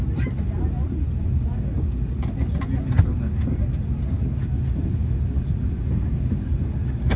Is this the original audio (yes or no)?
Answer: yes